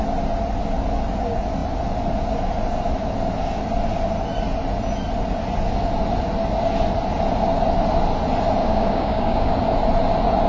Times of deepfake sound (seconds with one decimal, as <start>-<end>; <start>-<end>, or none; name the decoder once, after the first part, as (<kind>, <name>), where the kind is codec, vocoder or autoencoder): 8.6-9.5 (codec, DAC)